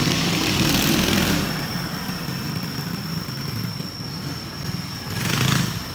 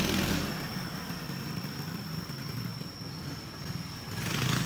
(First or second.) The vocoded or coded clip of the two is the first